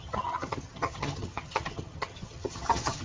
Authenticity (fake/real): fake